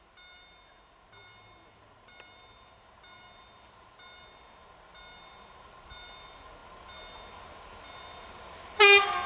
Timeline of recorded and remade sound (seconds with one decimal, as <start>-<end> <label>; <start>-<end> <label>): 0.0-9.3 recorded